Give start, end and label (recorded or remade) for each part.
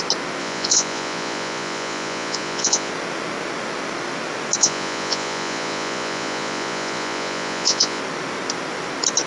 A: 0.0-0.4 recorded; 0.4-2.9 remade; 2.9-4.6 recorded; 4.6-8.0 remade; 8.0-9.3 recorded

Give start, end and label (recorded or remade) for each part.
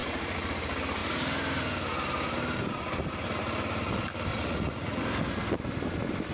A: 0.0-0.5 remade; 0.5-4.3 recorded; 4.3-5.0 remade; 5.0-6.3 recorded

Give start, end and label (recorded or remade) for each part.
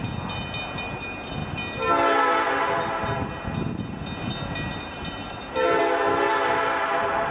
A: 0.0-7.3 recorded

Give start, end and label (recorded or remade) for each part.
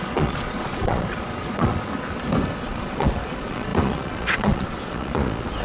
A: 0.0-1.9 remade; 1.9-2.6 recorded; 2.6-5.6 remade